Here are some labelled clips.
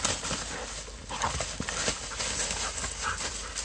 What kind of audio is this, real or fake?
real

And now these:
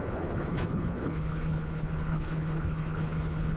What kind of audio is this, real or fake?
fake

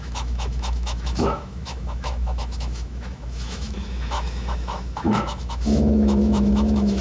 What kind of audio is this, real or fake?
fake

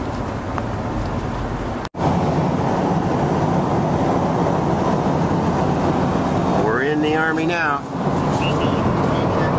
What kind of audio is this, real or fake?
real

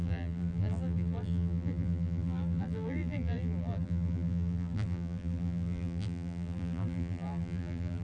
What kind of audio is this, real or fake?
fake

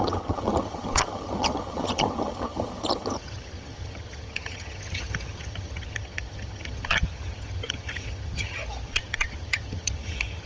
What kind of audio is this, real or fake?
fake